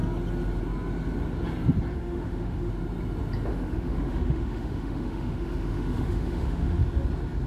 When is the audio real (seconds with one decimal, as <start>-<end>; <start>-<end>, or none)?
0.0-1.9; 2.7-3.5; 6.8-7.5